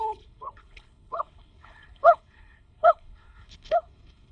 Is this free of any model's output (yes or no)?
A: no